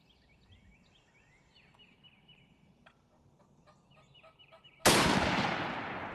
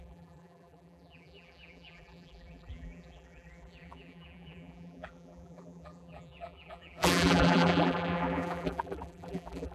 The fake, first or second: second